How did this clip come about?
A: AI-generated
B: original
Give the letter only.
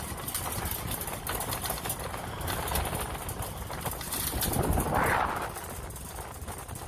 B